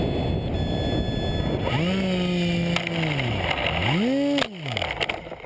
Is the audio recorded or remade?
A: recorded